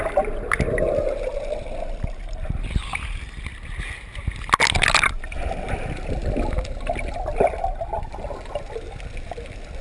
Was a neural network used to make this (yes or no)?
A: no